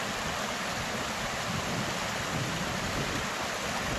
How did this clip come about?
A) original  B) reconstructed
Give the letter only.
A